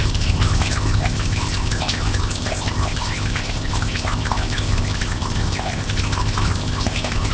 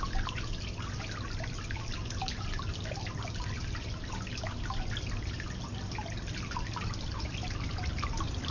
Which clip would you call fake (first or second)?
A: first